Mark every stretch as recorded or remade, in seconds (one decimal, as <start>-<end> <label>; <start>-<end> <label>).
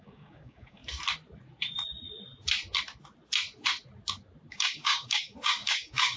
0.0-0.8 remade; 0.8-4.5 recorded; 4.5-6.2 remade